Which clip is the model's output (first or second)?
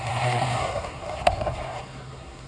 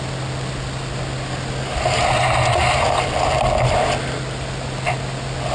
first